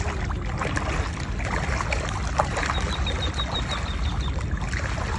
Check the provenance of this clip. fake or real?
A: real